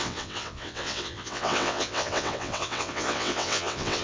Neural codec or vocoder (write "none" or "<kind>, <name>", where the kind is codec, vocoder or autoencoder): vocoder, WaveNeXt